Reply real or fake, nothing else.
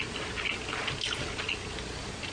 real